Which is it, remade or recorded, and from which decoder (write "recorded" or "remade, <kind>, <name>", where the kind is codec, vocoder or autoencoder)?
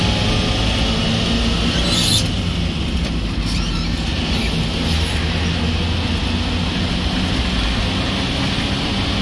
recorded